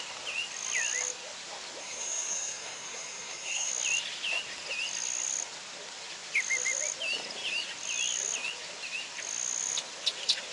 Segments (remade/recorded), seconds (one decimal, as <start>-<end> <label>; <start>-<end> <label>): 0.0-1.8 recorded; 1.8-3.7 remade; 3.7-10.5 recorded